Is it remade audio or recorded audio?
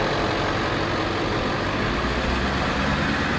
recorded